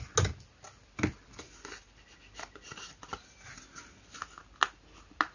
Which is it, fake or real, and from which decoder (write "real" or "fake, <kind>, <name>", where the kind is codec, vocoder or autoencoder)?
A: real